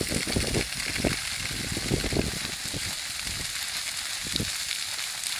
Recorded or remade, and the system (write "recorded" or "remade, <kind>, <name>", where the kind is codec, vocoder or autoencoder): recorded